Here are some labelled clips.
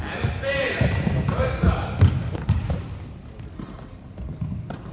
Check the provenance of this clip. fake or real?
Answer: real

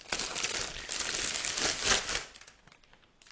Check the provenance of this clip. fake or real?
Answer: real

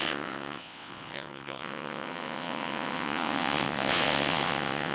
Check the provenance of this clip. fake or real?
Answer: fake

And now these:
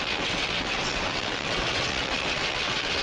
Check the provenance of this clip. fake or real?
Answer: fake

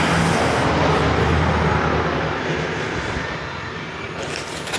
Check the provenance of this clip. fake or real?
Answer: real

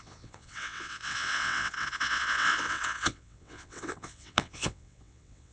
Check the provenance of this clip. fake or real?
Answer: fake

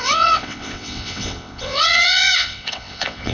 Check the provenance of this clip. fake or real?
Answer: fake